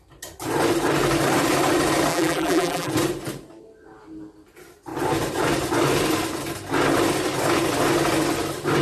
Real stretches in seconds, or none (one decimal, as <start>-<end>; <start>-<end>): 0.0-2.1; 2.9-8.8